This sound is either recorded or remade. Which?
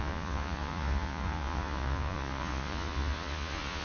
remade